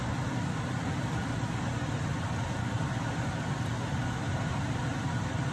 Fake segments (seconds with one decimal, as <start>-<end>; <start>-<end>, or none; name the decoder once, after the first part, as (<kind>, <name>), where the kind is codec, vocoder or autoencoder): 0.0-1.2 (vocoder, BigVGAN v2); 4.5-5.5